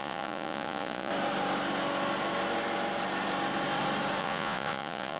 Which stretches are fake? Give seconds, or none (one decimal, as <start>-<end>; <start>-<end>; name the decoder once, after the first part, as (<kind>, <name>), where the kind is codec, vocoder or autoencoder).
0.0-1.1 (vocoder, Vocos); 4.2-5.2